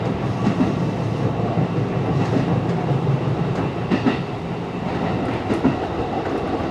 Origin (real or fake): real